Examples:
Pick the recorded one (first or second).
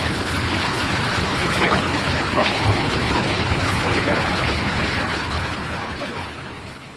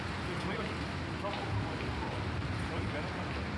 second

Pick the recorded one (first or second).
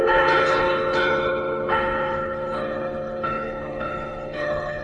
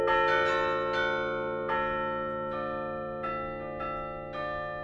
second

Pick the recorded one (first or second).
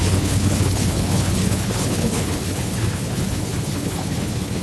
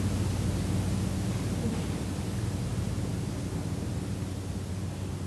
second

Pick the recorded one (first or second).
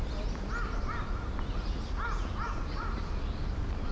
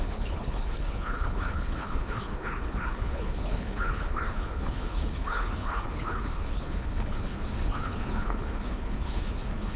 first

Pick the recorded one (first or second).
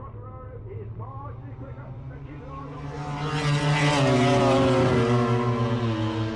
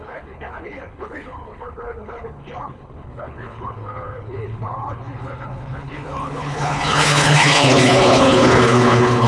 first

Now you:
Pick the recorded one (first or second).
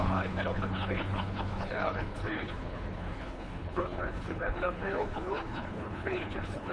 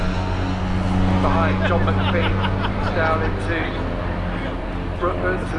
second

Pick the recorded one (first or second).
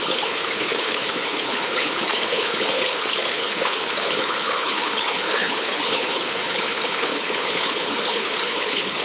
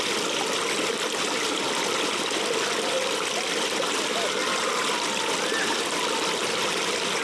second